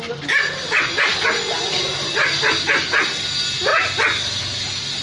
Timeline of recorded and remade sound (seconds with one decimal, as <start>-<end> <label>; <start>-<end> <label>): 0.0-5.0 recorded